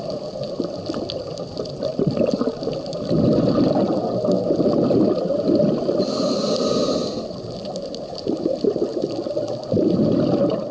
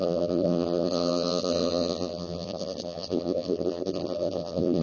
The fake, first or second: second